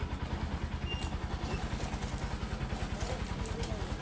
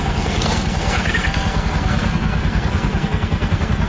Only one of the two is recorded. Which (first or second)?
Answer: first